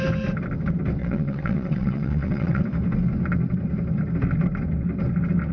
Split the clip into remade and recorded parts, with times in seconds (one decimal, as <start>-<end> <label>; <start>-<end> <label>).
0.0-1.0 recorded; 1.0-2.6 remade; 2.6-5.5 recorded